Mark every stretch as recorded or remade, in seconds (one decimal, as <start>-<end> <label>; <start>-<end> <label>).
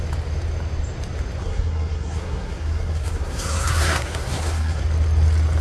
0.0-1.4 recorded; 1.4-4.8 remade; 4.8-5.6 recorded